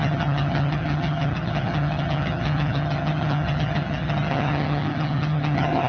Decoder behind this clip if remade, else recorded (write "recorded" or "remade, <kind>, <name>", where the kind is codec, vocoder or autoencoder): remade, vocoder, HiFi-GAN